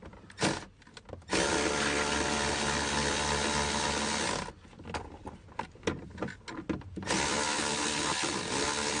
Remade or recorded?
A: recorded